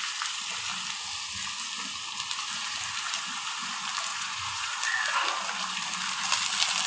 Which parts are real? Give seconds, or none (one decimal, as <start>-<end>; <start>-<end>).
0.0-4.1; 4.7-6.9